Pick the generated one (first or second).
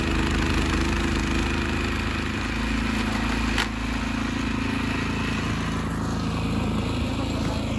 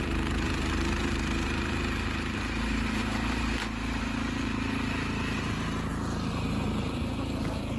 second